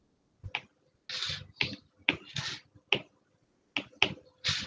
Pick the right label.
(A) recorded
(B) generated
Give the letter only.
A